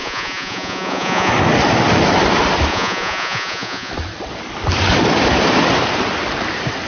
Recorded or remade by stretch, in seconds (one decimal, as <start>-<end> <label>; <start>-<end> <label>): 0.0-1.3 remade; 1.3-2.7 recorded; 2.7-3.9 remade; 3.9-6.9 recorded